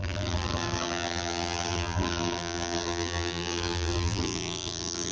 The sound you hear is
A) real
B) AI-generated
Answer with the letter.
B